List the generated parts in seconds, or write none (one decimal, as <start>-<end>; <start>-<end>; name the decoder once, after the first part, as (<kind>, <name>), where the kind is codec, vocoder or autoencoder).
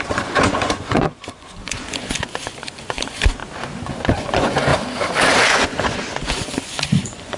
0.0-3.4 (vocoder, Vocos); 4.1-4.7; 5.4-7.4